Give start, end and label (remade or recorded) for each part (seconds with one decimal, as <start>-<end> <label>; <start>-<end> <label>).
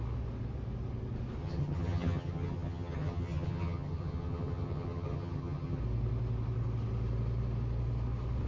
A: 0.0-1.4 recorded; 1.4-5.8 remade; 5.8-8.5 recorded